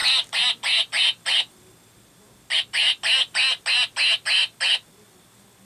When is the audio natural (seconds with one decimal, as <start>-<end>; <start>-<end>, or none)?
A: 0.0-5.6